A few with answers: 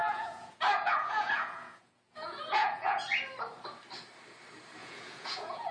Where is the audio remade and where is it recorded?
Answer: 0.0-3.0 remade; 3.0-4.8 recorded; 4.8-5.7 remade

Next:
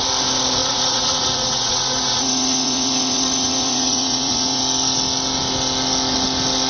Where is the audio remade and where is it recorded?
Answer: 0.0-0.6 recorded; 0.6-4.6 remade; 4.6-6.7 recorded

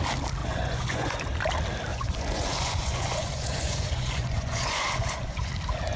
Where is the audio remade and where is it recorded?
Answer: 0.0-0.4 recorded; 0.4-1.2 remade; 1.2-1.9 recorded; 1.9-5.5 remade; 5.5-6.0 recorded